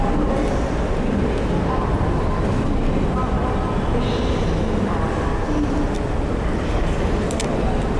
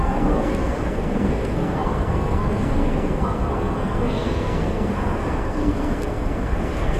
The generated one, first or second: second